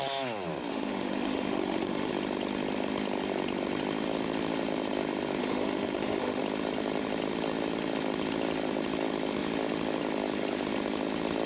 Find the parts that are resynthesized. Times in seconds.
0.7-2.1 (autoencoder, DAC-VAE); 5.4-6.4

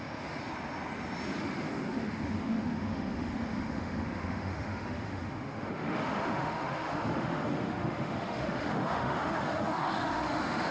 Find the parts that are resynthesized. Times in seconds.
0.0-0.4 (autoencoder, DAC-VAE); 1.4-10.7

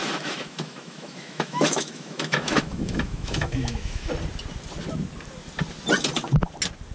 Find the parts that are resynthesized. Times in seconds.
0.0-4.1 (autoencoder, DAC-VAE)

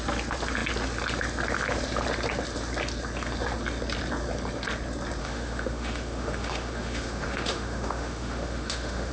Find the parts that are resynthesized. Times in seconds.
5.2-9.1 (autoencoder, DAC-VAE)

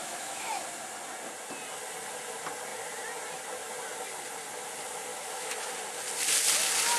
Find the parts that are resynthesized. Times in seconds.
0.0-0.6 (autoencoder, DAC-VAE); 5.1-5.7

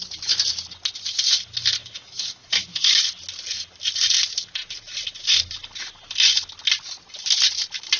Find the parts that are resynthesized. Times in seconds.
1.8-3.0 (autoencoder, DAC-VAE)

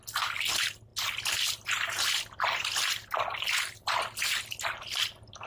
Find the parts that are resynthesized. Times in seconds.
none

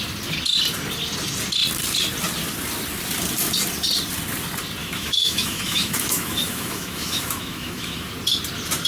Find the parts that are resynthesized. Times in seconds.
4.8-8.1 (autoencoder, DAC-VAE)